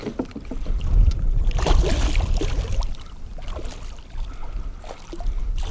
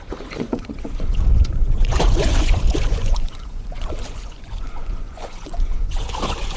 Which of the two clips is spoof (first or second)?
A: second